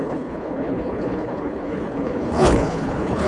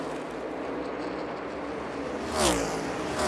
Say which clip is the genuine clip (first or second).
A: second